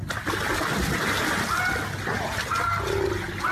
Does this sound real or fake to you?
real